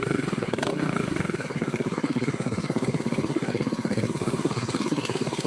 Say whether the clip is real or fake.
fake